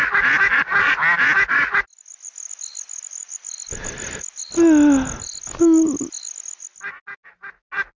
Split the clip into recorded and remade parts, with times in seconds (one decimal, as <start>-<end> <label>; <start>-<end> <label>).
0.0-8.0 recorded

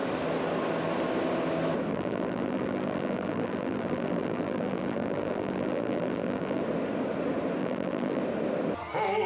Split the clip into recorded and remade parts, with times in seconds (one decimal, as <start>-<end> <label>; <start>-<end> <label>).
0.0-1.9 recorded; 1.9-6.6 remade; 6.6-7.6 recorded; 7.6-8.2 remade; 8.2-9.3 recorded

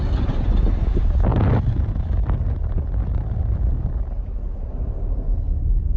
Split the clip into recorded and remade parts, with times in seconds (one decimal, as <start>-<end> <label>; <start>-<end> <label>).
0.0-6.0 recorded

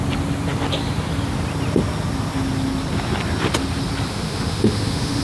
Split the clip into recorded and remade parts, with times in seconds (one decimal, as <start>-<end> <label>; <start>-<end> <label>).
0.0-4.1 recorded; 4.1-5.2 remade

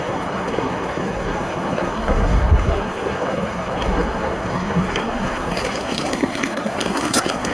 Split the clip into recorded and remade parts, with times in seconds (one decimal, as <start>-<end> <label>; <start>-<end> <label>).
0.0-7.5 remade

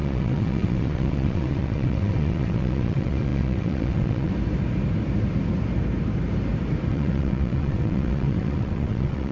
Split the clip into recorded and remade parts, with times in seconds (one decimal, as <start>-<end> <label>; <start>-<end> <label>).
0.0-4.3 remade; 4.3-6.9 recorded; 6.9-9.3 remade

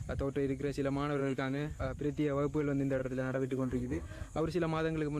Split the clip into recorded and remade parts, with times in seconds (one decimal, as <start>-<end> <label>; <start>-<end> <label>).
0.0-1.2 recorded; 1.2-1.8 remade; 1.8-3.0 recorded; 3.0-4.4 remade; 4.4-5.2 recorded